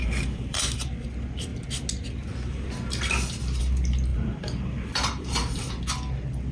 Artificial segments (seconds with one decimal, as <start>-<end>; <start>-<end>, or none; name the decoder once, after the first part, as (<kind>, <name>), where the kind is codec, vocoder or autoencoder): 0.0-0.6 (vocoder, BigVGAN v2); 4.1-5.7